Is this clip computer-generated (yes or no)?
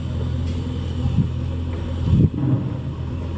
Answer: no